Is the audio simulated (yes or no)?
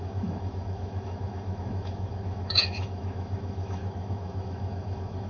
yes